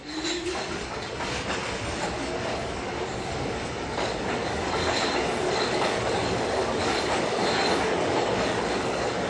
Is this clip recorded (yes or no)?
no